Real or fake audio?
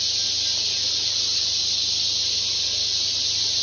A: real